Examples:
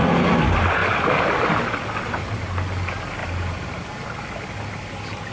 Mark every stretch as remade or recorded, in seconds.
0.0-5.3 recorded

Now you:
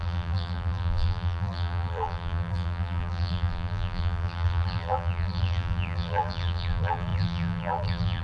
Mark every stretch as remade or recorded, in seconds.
0.0-8.2 remade

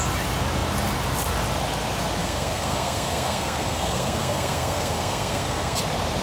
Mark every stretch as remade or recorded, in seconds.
0.0-2.2 recorded; 2.2-5.8 remade; 5.8-6.2 recorded

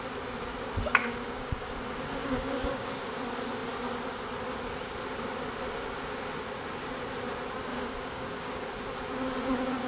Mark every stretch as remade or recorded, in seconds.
0.0-1.0 recorded; 1.0-1.7 remade; 1.7-2.2 recorded; 2.2-3.0 remade; 3.0-7.7 recorded; 7.7-8.7 remade; 8.7-9.9 recorded

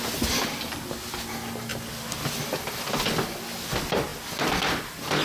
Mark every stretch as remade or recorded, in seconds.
0.0-5.2 recorded

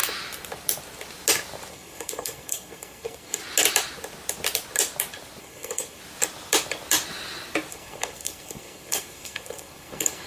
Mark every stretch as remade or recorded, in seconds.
0.0-1.7 recorded; 1.7-3.4 remade; 3.4-5.4 recorded; 5.4-6.0 remade; 6.0-7.7 recorded; 7.7-10.3 remade

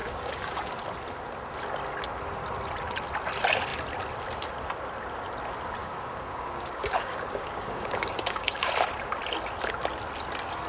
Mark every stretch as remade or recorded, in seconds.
0.0-0.7 remade; 0.7-5.8 recorded; 5.8-8.7 remade; 8.7-10.7 recorded